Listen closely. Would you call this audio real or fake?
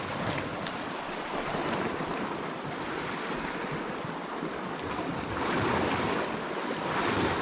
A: real